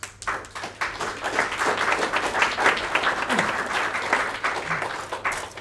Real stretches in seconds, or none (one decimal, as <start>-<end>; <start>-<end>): 0.0-2.0